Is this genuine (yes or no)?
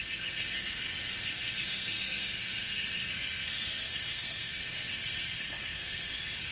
no